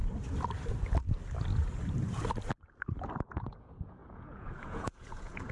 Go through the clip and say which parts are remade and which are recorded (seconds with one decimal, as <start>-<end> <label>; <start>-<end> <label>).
0.0-3.3 recorded; 3.3-5.5 remade